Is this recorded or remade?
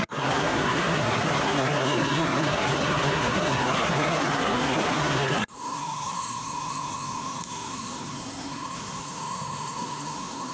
remade